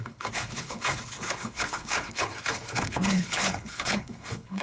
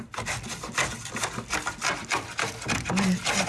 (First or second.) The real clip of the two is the second